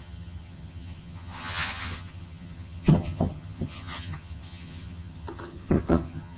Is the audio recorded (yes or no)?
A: no